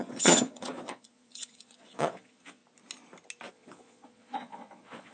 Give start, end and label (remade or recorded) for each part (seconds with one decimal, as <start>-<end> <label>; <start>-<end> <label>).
0.0-2.6 remade; 2.6-3.5 recorded; 3.5-5.1 remade